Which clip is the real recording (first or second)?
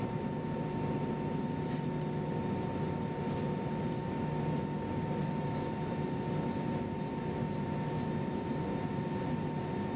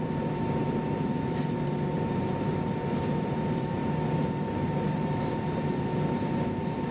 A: first